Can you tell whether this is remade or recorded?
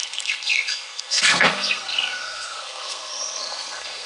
remade